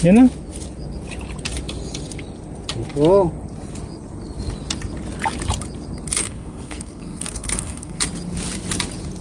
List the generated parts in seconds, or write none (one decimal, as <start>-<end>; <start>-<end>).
6.2-8.0